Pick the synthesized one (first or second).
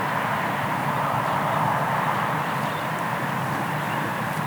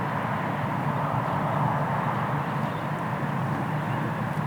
first